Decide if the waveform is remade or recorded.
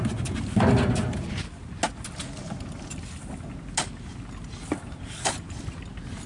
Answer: recorded